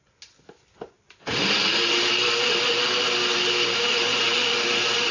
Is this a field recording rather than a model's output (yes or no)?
yes